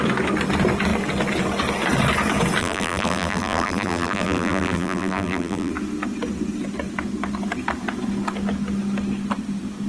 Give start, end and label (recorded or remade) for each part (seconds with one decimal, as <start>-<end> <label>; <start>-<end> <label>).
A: 0.0-2.6 recorded; 2.6-5.7 remade; 5.7-9.9 recorded